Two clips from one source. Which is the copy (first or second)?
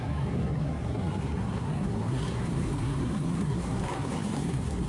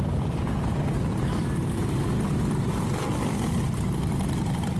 first